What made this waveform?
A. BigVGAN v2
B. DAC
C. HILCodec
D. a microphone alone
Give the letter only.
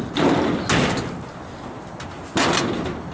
D